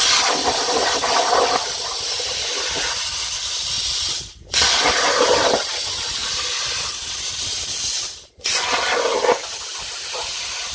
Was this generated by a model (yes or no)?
no